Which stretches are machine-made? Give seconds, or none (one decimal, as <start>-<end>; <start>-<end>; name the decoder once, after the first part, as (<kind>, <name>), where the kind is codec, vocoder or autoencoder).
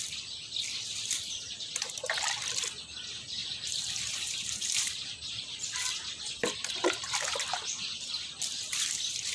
3.4-5.6 (vocoder, BigVGAN v2)